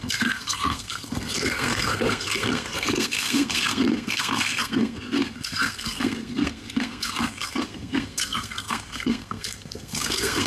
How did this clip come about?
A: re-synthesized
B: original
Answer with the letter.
A